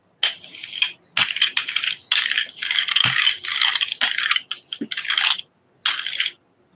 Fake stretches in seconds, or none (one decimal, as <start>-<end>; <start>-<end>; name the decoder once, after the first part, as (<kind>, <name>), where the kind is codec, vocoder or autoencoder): none